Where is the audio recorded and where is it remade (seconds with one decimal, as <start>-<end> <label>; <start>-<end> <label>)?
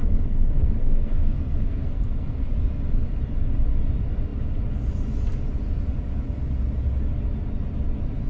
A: 0.0-2.5 remade; 2.5-8.3 recorded